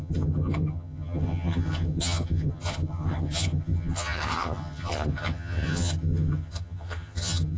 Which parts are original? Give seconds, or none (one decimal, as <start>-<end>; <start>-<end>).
none